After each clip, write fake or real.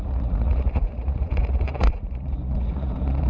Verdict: fake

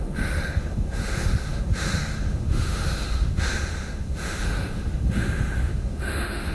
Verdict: fake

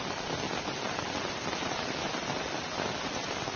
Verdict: real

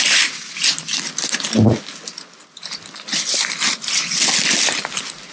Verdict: real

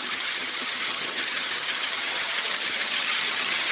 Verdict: fake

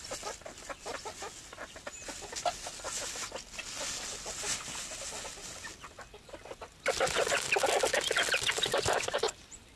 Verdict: real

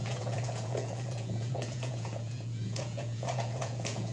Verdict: fake